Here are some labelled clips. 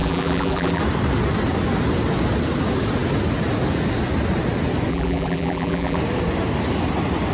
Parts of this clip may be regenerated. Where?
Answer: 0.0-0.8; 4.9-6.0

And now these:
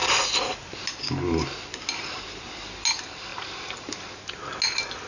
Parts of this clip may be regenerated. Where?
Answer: none

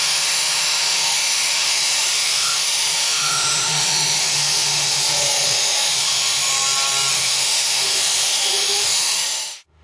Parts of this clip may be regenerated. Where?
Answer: 0.0-6.5; 7.1-9.8